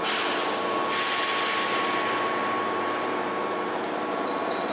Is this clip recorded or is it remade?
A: recorded